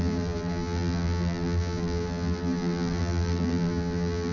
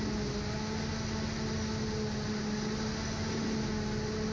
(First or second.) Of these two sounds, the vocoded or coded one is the first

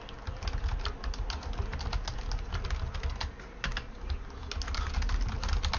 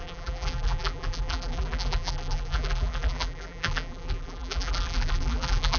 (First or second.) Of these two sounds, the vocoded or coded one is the second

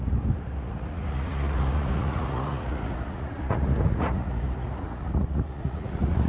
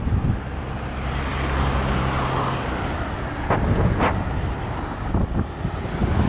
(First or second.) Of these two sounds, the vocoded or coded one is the first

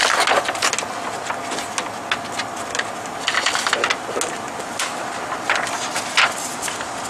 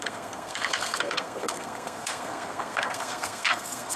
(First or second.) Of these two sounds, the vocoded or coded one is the second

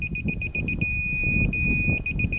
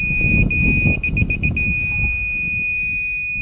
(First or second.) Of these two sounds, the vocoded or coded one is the second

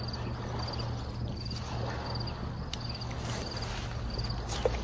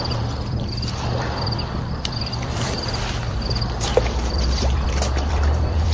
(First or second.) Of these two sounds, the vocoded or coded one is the second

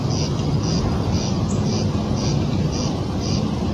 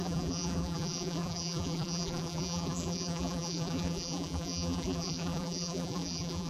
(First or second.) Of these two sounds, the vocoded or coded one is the second